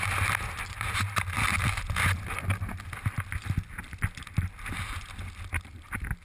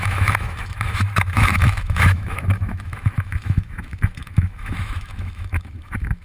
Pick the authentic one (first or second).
first